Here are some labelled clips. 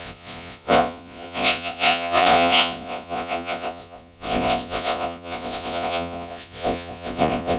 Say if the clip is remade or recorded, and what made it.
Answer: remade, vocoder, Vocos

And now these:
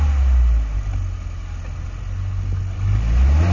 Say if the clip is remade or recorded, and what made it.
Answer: recorded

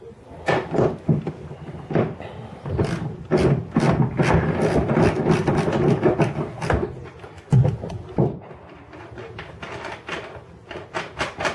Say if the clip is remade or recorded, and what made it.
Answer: recorded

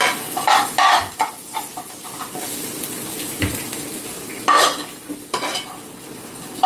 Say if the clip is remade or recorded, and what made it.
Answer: recorded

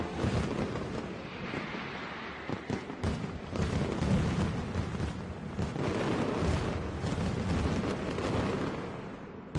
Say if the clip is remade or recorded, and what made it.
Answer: recorded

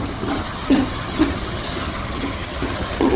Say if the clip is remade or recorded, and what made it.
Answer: remade, vocoder, HiFi-GAN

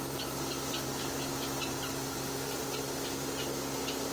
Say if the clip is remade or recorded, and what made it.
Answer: recorded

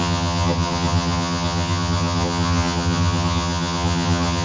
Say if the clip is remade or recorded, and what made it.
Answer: remade, vocoder, HiFi-GAN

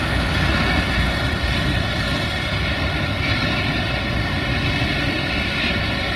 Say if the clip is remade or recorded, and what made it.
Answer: recorded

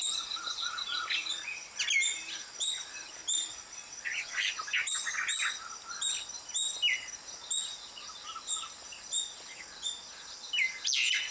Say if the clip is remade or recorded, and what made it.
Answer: recorded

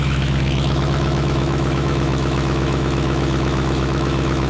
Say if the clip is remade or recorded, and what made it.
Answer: remade, autoencoder, DAC-VAE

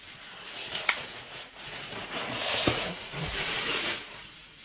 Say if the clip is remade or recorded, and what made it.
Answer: remade, vocoder, Vocos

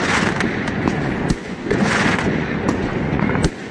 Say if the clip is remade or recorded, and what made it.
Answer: remade, vocoder, Vocos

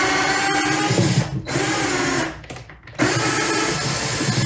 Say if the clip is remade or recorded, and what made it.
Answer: recorded